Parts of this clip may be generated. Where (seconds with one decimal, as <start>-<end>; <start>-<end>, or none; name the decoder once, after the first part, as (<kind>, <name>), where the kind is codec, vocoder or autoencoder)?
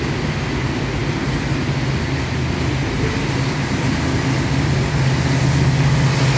none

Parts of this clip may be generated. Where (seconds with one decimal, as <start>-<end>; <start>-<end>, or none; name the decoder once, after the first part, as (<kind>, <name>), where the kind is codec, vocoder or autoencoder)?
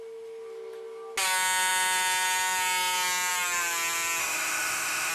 4.2-5.1 (autoencoder, DAC-VAE)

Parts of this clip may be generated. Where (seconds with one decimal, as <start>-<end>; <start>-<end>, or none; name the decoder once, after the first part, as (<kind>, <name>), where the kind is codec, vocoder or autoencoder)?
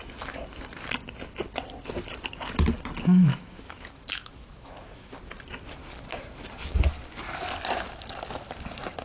3.3-5.2 (autoencoder, DAC-VAE)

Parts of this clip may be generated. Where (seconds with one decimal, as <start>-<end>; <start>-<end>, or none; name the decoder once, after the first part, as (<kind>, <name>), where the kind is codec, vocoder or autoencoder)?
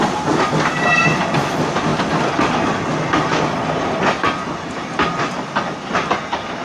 none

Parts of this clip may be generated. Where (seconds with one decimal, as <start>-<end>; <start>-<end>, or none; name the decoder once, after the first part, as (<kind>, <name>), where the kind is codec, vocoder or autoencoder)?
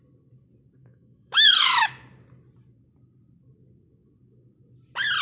0.8-1.9 (autoencoder, DAC-VAE)